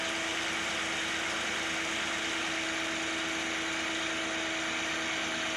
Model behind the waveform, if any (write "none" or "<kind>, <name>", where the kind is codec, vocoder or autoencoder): none